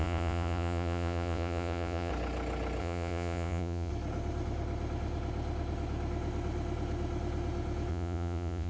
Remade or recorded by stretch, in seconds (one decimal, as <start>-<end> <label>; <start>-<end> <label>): 0.0-2.1 remade; 2.1-2.8 recorded; 2.8-3.9 remade; 3.9-7.9 recorded; 7.9-8.7 remade